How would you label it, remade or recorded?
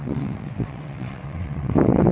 remade